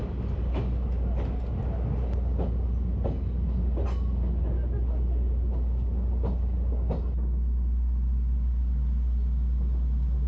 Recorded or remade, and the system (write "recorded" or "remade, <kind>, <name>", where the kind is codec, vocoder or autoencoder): recorded